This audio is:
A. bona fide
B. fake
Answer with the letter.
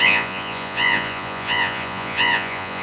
B